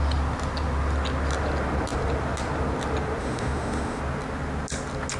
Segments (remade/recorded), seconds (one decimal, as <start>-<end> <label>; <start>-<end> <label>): 0.0-3.2 recorded; 3.2-4.0 remade; 4.0-5.2 recorded